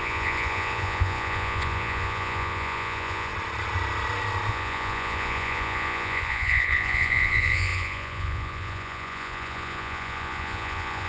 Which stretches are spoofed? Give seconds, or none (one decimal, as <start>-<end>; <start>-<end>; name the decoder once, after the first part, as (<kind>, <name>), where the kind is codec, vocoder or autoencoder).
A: 0.0-3.3 (vocoder, Vocos); 4.5-11.1

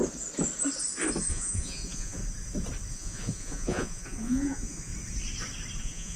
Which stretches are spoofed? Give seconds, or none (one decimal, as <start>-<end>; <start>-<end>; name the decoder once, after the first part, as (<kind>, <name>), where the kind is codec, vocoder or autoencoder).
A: 1.3-2.2 (vocoder, Vocos); 2.9-4.9; 5.8-6.2

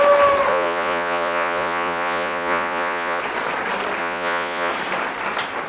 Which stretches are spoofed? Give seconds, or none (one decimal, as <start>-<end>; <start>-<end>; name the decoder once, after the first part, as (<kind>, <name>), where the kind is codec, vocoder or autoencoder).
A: 0.5-3.2 (vocoder, Vocos); 4.0-4.7

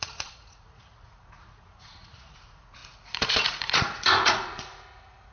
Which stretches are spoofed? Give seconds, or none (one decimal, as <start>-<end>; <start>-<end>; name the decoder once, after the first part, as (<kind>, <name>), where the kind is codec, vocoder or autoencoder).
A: 0.0-5.3 (vocoder, Vocos)

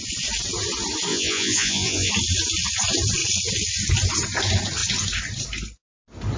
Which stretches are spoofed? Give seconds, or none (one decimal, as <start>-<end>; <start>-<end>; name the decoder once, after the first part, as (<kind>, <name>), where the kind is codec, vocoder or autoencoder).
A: 1.1-2.1 (vocoder, Vocos)

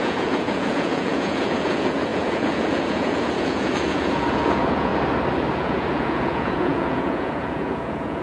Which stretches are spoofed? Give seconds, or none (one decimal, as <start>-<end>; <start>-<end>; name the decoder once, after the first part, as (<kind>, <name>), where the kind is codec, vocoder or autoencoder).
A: 0.0-4.9 (vocoder, Vocos); 5.5-8.2

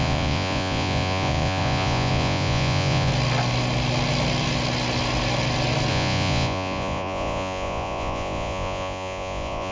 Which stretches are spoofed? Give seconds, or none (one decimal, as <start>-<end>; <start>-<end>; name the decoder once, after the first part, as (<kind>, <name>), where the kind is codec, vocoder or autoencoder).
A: 0.0-3.1 (vocoder, Vocos); 5.9-9.7

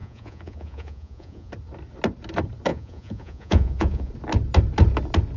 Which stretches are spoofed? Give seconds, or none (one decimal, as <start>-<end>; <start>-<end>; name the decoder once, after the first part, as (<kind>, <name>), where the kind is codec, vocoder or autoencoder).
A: 0.0-1.5 (vocoder, Vocos); 2.7-4.1